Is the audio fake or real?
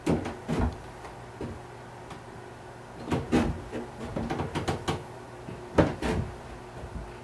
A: real